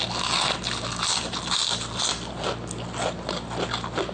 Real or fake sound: real